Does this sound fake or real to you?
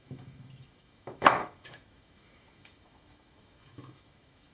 fake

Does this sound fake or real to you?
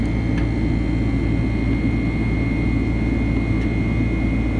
real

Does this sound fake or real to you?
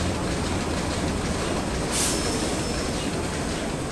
real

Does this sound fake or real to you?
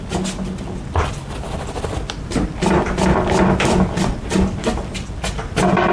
real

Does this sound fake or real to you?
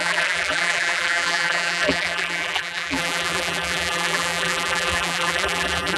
fake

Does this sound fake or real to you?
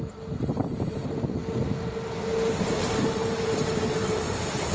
real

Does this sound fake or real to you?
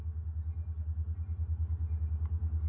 real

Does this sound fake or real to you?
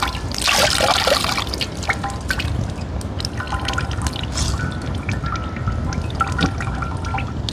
real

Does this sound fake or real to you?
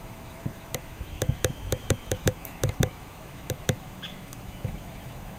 fake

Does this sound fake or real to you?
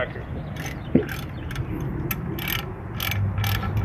real